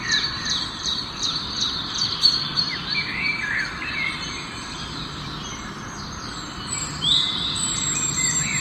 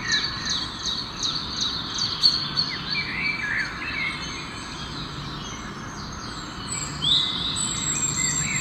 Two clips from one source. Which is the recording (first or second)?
second